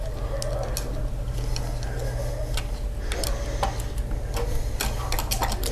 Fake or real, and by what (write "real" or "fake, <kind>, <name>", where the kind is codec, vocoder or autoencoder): real